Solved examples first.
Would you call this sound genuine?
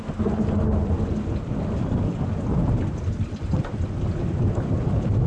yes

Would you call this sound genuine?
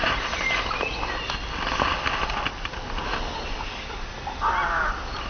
yes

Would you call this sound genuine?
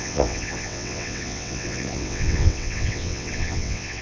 no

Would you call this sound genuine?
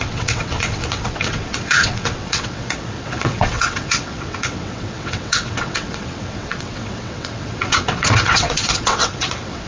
no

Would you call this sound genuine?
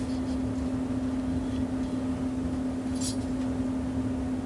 yes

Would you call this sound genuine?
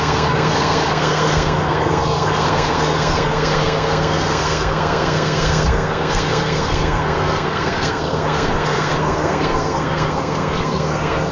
no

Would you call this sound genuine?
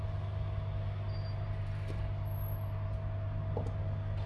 yes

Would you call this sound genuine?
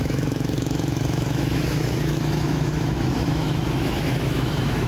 no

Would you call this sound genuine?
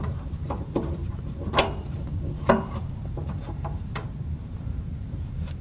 no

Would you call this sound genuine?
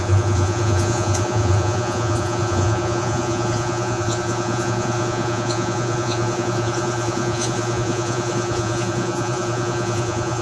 no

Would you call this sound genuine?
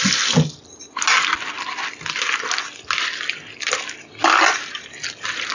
yes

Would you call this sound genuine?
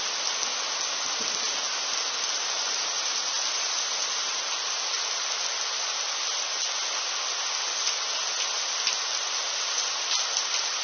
yes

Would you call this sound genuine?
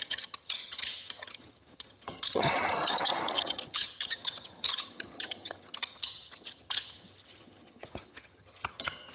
no